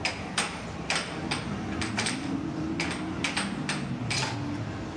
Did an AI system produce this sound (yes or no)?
no